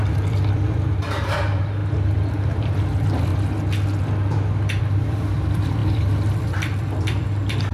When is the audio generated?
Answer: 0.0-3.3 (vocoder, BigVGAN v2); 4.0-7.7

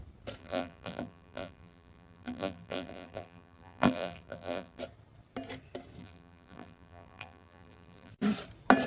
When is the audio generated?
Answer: 0.4-4.8 (vocoder, BigVGAN v2); 6.0-8.1

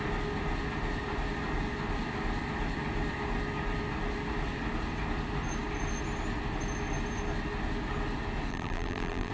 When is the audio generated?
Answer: 8.5-9.3 (vocoder, BigVGAN v2)

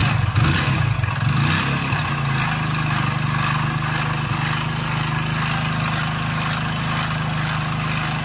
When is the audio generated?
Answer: none

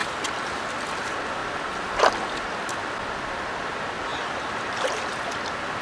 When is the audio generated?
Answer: 4.1-5.3 (vocoder, BigVGAN v2)

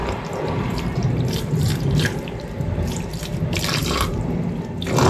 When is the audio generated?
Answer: 0.0-3.1 (vocoder, BigVGAN v2); 3.8-4.4

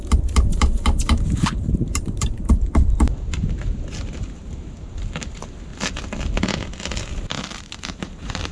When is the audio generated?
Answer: 0.0-5.7 (vocoder, BigVGAN v2); 7.6-8.5